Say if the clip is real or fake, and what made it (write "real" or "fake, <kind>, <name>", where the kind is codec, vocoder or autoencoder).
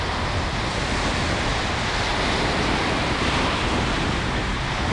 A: real